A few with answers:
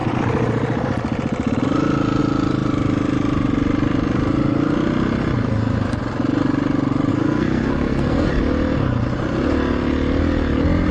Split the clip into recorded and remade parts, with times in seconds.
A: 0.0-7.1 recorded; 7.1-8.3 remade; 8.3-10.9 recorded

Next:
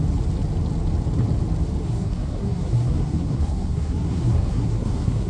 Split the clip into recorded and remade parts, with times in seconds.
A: 0.0-1.8 recorded; 1.8-5.3 remade

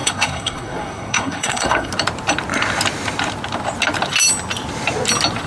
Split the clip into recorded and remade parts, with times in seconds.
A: 0.0-1.9 remade; 1.9-5.5 recorded

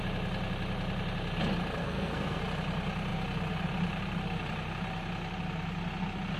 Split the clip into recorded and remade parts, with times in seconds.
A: 0.0-1.8 recorded; 1.8-2.4 remade; 2.4-6.4 recorded

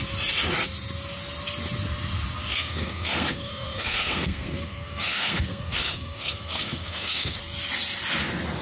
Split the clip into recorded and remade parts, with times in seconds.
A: 0.0-2.5 recorded; 2.5-7.4 remade; 7.4-8.6 recorded

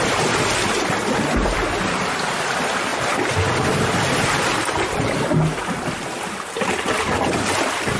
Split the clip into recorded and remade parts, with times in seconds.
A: 0.0-8.0 recorded

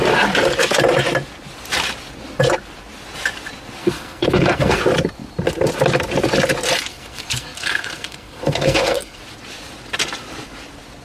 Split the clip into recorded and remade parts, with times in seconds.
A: 0.0-3.8 recorded; 3.8-4.8 remade; 4.8-6.9 recorded; 6.9-9.2 remade; 9.2-11.0 recorded